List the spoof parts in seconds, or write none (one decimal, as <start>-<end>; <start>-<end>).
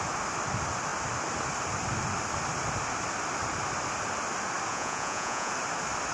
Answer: 4.7-5.5